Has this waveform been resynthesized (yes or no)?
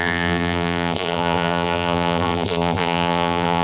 yes